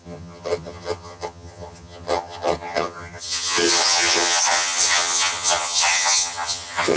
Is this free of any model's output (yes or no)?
no